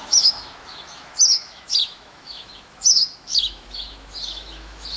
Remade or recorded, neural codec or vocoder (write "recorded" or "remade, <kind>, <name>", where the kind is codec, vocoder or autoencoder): remade, autoencoder, DAC-VAE